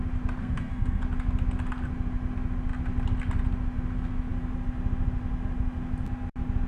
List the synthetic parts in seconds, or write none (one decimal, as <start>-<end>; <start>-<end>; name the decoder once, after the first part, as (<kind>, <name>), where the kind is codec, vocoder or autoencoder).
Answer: 0.4-1.0 (codec, SNAC)